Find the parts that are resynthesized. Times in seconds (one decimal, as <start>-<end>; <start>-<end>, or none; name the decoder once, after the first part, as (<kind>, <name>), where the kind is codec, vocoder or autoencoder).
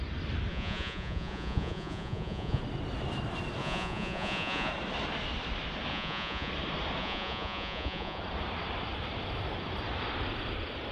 0.5-2.6 (vocoder, Vocos); 3.6-4.7; 5.9-6.5; 7.0-8.2